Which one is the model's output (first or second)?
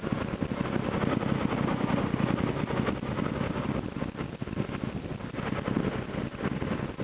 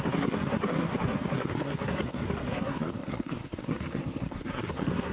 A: second